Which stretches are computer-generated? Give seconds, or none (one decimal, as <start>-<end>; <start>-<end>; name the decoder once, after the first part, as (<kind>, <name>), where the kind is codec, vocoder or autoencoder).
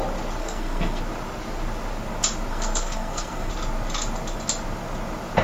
0.4-1.0 (codec, SNAC); 2.5-3.5